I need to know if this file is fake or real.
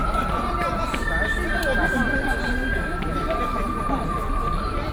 real